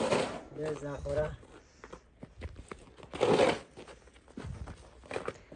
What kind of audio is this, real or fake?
real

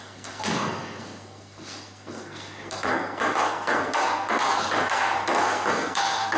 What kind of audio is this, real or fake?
fake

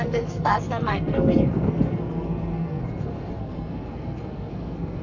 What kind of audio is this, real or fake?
fake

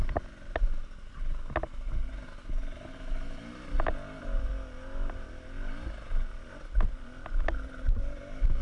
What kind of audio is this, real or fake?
real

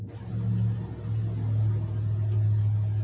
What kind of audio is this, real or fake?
real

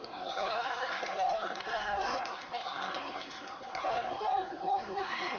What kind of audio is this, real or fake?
fake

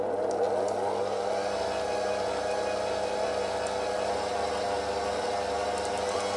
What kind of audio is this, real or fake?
real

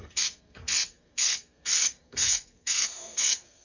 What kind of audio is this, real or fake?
fake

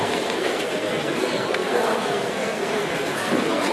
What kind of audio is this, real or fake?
fake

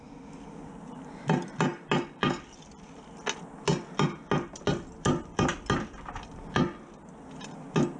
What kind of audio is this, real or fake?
real